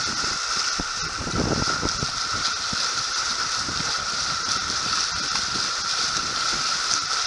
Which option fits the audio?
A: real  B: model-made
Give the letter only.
A